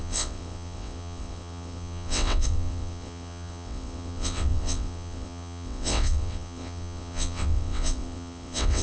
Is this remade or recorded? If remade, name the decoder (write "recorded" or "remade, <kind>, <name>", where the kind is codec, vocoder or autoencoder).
remade, vocoder, WaveNeXt